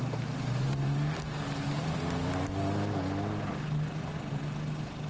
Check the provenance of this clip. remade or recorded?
recorded